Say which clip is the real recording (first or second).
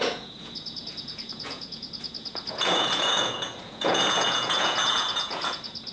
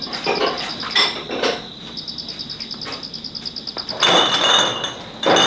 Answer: second